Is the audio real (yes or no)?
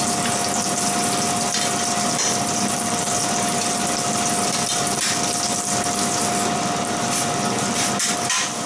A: yes